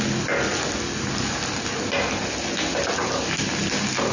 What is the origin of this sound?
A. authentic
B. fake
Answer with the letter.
A